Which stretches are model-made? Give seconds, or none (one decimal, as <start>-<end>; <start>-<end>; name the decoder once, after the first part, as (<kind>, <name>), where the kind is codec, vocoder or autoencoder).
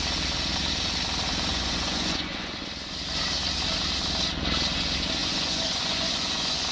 1.5-2.6 (vocoder, Vocos); 5.2-6.7